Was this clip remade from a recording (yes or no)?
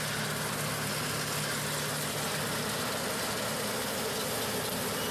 no